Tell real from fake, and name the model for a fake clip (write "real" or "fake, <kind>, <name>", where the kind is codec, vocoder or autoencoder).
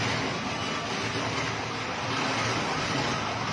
real